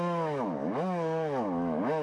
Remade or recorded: remade